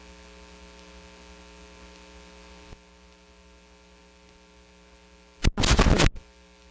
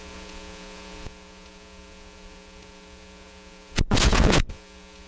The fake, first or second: second